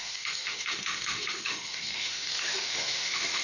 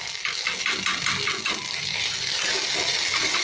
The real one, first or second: second